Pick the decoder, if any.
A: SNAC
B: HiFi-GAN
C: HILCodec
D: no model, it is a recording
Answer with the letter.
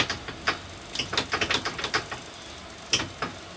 D